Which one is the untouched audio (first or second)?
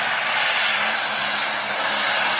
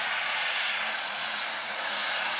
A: first